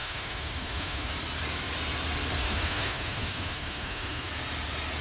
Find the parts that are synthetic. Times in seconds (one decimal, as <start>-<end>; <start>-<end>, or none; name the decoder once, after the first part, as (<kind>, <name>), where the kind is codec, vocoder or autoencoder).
0.0-1.1 (autoencoder, DAC-VAE); 2.4-4.3